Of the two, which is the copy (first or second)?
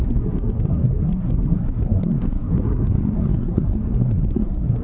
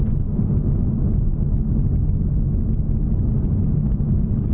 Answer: first